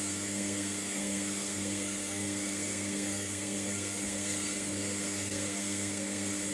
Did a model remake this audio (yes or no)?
yes